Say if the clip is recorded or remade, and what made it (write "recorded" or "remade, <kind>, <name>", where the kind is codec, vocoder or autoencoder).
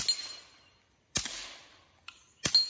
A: recorded